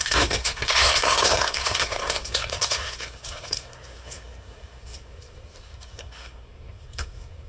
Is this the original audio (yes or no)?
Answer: no